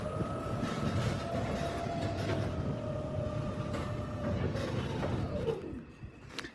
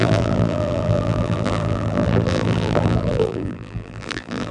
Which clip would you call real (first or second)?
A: first